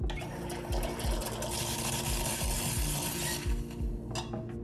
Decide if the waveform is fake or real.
real